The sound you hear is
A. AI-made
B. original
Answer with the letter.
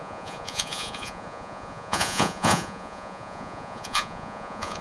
A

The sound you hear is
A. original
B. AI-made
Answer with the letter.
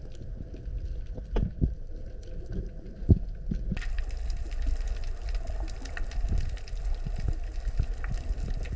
A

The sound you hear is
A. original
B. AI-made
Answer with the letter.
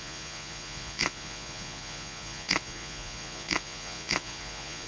B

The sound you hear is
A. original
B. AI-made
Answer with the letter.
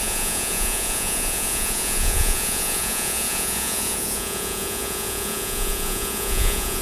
B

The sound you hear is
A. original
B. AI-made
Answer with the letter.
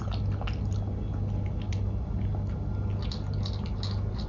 A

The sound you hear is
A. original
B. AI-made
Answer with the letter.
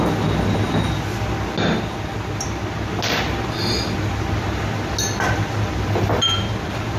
A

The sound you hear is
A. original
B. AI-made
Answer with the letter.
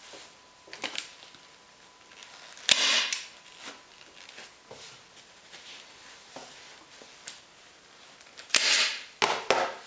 A